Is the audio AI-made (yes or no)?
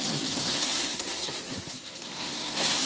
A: yes